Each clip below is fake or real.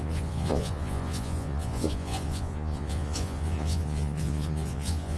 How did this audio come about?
fake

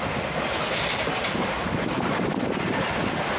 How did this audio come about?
real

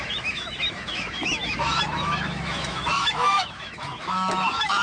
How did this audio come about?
fake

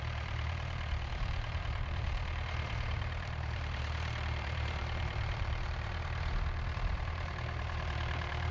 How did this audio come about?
fake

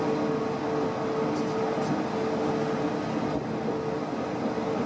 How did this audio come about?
real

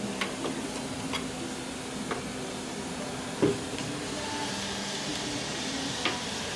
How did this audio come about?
real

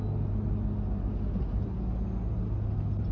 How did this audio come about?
real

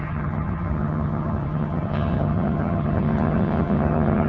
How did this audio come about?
fake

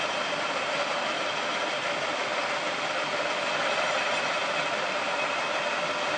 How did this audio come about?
real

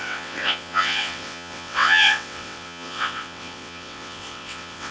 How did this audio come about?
fake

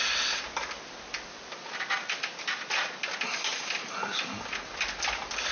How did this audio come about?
real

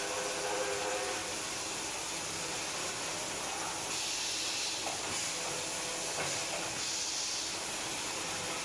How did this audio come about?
real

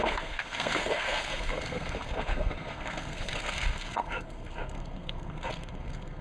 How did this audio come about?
fake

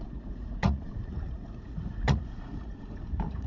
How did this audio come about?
fake